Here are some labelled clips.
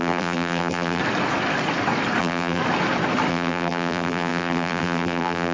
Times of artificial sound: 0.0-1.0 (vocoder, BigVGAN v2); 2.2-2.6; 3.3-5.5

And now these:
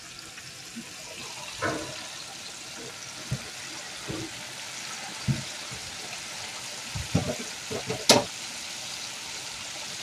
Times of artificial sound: 5.8-6.4 (vocoder, BigVGAN v2)